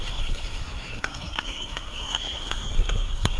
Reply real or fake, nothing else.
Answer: fake